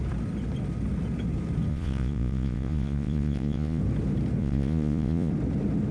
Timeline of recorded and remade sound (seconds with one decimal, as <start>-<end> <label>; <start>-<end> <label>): 0.0-1.7 recorded; 1.7-3.8 remade; 3.8-4.4 recorded; 4.4-5.3 remade; 5.3-5.9 recorded